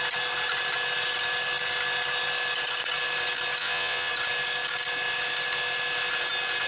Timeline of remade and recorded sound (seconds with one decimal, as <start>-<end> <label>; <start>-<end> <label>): 0.0-3.6 recorded; 3.6-4.1 remade; 4.1-6.7 recorded